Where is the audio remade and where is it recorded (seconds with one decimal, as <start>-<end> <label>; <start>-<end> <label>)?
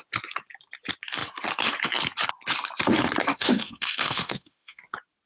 0.0-3.3 recorded; 3.3-4.8 remade; 4.8-5.3 recorded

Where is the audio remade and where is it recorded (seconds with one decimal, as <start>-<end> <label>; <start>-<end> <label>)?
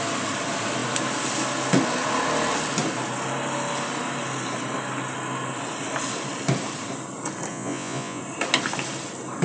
0.0-7.5 recorded; 7.5-8.2 remade; 8.2-9.4 recorded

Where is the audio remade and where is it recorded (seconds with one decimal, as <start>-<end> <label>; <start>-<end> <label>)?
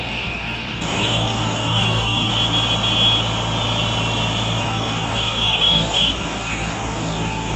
0.0-2.3 remade; 2.3-4.6 recorded; 4.6-7.6 remade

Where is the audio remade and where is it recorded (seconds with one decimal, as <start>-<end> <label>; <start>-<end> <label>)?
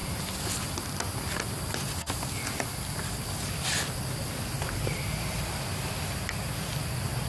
0.0-7.3 recorded